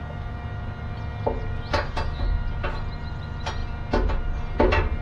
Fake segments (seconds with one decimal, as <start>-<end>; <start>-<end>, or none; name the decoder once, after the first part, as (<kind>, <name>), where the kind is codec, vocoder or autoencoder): none